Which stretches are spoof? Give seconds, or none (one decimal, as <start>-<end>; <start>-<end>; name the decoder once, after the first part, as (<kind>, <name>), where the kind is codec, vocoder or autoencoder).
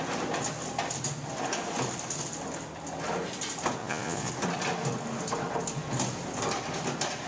3.8-4.3 (vocoder, Vocos)